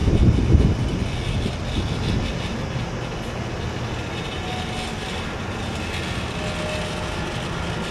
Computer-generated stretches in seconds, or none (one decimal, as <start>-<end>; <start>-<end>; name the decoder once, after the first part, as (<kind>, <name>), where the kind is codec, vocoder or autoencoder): none